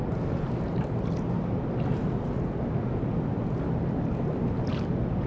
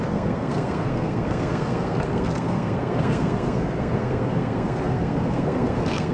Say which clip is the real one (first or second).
first